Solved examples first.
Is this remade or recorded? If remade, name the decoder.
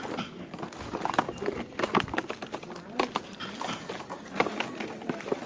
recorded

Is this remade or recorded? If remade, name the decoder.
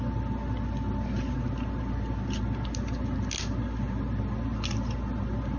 recorded